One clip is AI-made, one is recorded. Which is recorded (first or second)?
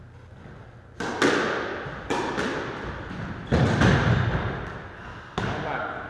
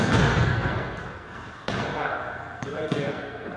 first